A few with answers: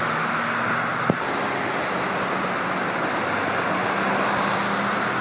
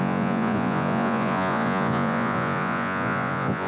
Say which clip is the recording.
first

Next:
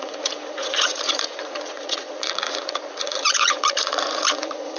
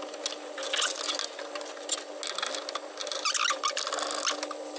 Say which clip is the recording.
second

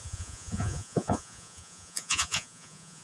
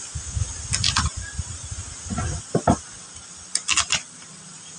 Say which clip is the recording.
second